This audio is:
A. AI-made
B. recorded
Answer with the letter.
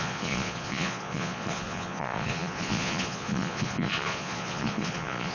A